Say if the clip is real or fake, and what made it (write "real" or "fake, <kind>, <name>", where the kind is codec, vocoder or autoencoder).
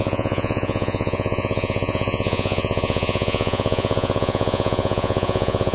fake, vocoder, Vocos